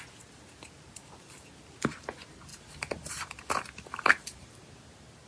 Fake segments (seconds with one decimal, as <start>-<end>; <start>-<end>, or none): 2.5-4.5